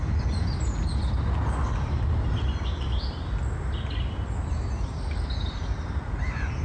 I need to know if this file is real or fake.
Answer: real